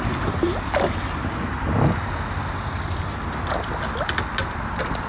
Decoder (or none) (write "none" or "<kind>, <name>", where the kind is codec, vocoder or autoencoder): none